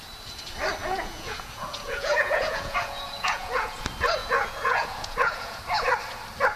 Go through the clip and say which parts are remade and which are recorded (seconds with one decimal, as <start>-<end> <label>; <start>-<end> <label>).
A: 0.0-0.8 recorded; 0.8-3.8 remade; 3.8-4.2 recorded; 4.2-5.6 remade; 5.6-6.6 recorded